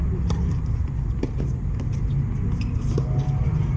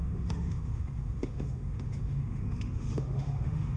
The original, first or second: first